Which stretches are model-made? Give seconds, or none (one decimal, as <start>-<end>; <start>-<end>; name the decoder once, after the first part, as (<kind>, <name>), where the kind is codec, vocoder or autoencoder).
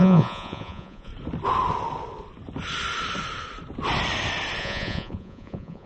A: 0.0-1.1 (vocoder, Vocos); 4.6-5.9